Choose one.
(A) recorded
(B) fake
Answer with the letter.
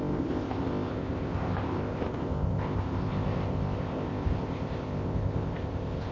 B